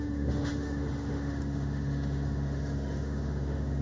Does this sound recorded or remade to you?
remade